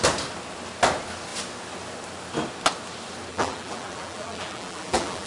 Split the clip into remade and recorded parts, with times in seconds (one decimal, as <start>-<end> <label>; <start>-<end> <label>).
0.0-3.3 recorded; 3.3-5.3 remade